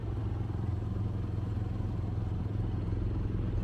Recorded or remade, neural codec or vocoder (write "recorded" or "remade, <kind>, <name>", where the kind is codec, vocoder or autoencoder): recorded